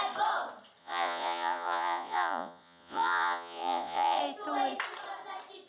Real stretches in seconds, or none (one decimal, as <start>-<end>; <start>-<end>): 0.0-0.8; 4.2-5.7